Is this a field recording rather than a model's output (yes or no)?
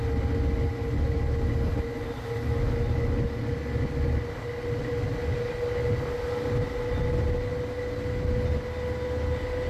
yes